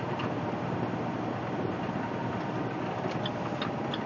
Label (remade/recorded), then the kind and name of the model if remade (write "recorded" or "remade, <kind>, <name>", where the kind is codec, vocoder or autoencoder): recorded